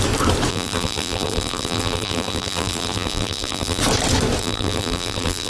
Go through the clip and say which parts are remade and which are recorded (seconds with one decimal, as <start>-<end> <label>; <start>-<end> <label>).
0.0-0.5 recorded; 0.5-3.8 remade; 3.8-4.4 recorded; 4.4-5.5 remade